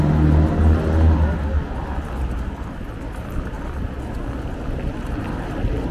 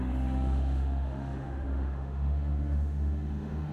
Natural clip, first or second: first